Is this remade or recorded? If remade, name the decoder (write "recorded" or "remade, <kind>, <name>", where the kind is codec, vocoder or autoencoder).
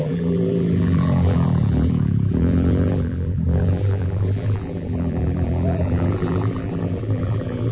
remade, vocoder, BigVGAN v2